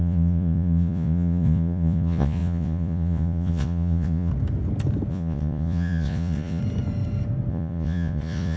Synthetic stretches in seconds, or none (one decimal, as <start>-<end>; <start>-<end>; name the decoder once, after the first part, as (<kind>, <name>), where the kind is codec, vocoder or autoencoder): 0.0-4.3 (vocoder, Vocos); 5.1-6.6; 7.5-8.6